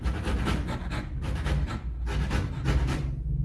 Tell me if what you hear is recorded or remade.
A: recorded